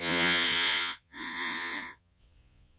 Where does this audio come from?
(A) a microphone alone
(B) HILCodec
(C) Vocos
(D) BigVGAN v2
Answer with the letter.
C